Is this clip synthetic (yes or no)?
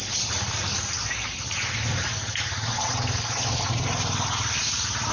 no